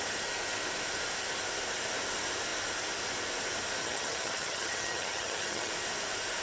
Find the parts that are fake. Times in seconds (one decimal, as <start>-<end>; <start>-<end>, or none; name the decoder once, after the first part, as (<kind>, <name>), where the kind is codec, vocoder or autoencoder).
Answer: 3.8-5.7 (vocoder, HiFi-GAN)